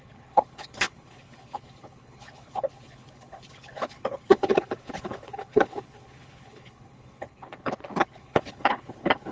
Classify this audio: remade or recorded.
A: remade